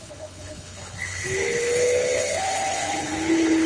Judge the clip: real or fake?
fake